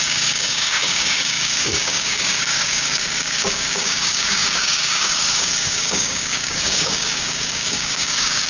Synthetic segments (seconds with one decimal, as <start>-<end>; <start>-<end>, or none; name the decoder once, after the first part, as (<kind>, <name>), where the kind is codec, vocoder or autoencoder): 0.0-8.5 (codec, DAC)